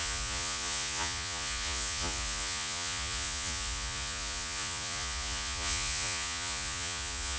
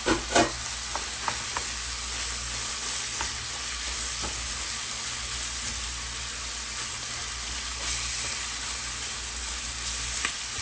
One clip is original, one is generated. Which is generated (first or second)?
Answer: first